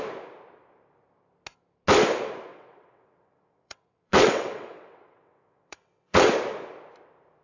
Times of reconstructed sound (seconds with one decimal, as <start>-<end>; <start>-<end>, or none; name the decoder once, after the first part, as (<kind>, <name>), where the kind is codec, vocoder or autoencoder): 2.5-6.3 (vocoder, WaveNeXt)